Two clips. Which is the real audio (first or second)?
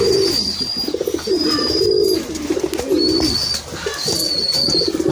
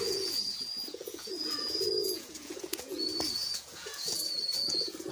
first